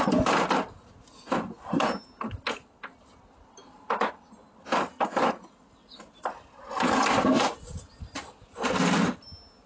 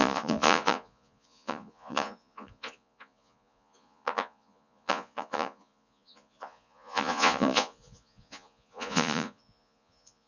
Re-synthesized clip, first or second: second